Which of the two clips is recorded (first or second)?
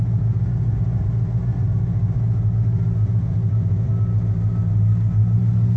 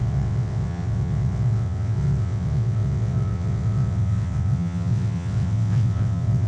first